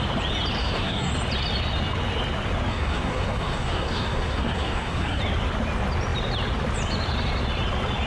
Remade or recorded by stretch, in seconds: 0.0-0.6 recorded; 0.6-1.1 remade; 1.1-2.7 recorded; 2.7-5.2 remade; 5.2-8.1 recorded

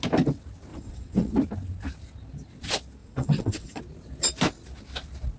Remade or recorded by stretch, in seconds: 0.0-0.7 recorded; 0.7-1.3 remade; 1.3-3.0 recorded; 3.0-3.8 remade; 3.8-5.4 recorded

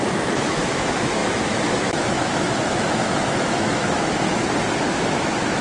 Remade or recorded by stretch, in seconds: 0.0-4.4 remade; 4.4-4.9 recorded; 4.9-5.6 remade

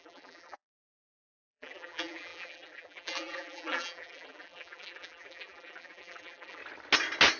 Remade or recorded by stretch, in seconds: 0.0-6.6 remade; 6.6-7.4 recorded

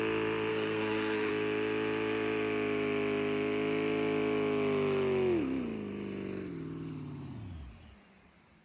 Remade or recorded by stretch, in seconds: 0.0-0.5 recorded; 0.5-1.3 remade; 1.3-8.6 recorded

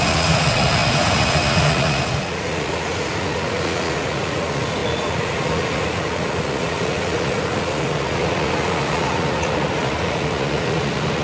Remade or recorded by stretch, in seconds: 0.0-11.2 remade

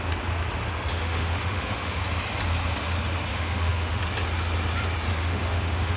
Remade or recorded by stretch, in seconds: 0.0-0.9 recorded; 0.9-2.0 remade; 2.0-3.3 recorded; 3.3-4.0 remade; 4.0-5.2 recorded; 5.2-6.0 remade

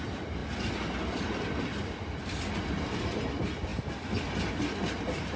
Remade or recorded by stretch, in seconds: 0.0-5.4 recorded